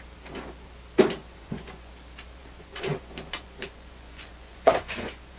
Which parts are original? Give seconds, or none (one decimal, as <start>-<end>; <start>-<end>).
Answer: 0.0-1.2; 1.9-2.4